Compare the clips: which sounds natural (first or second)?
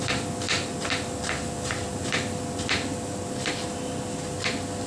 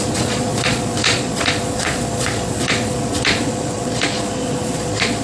first